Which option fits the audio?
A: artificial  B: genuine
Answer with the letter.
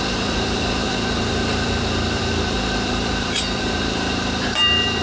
A